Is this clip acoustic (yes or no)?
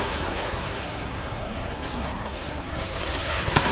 no